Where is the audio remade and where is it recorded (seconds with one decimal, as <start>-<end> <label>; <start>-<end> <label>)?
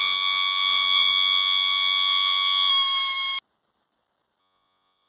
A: 0.0-2.7 remade; 2.7-4.4 recorded; 4.4-5.1 remade